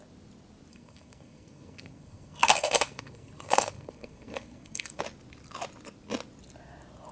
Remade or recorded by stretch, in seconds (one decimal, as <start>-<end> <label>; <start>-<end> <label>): 0.0-0.7 recorded; 0.7-5.0 remade; 5.0-7.1 recorded